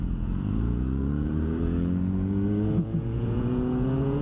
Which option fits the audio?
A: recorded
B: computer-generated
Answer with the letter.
B